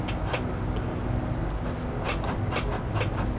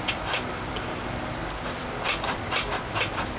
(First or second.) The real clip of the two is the first